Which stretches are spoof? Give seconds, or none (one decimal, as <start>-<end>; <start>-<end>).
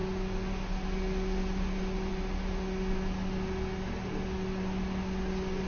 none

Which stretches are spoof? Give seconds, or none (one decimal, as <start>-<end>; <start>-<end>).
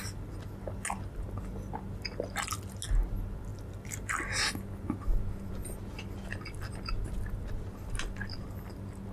none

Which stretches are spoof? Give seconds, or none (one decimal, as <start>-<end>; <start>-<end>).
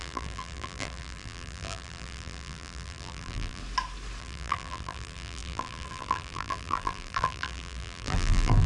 0.0-3.6; 4.2-8.7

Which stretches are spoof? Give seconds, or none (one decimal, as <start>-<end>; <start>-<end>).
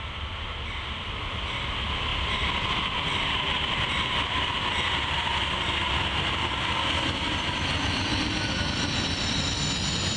none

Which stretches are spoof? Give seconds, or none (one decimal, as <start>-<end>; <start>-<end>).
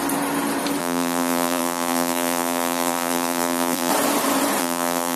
0.8-3.9; 4.6-5.2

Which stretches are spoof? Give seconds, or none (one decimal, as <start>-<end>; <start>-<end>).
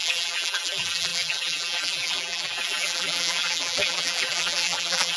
0.0-5.2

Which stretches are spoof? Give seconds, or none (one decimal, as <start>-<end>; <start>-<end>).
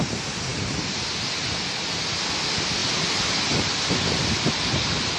none